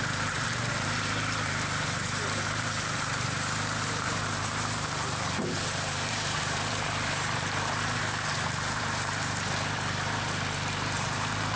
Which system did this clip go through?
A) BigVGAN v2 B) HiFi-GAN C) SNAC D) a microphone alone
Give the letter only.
A